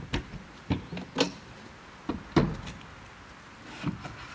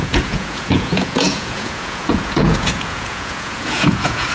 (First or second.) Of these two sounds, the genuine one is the first